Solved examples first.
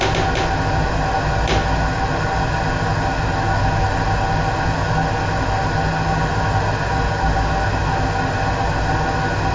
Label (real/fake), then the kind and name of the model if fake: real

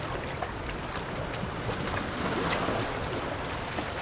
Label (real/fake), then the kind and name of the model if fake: real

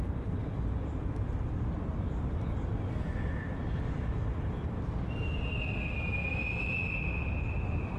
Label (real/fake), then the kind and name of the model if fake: real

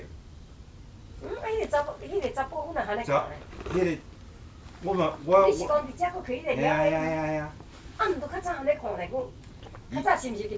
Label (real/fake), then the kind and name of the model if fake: real